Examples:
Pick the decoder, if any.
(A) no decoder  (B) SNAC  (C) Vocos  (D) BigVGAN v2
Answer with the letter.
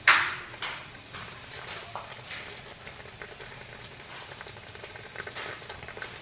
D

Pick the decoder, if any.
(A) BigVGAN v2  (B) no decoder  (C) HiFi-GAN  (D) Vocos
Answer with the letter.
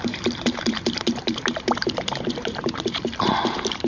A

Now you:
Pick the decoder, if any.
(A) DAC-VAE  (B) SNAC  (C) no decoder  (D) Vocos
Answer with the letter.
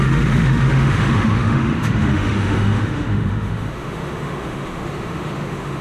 A